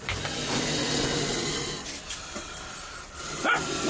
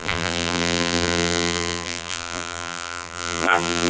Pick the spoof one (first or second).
second